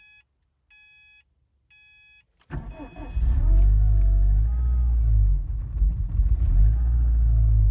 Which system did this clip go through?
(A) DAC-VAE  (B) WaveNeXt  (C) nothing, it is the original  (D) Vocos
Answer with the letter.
C